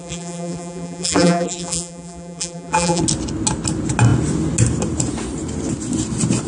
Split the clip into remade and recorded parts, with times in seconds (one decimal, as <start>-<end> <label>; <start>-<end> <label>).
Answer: 0.0-3.0 remade; 3.0-6.5 recorded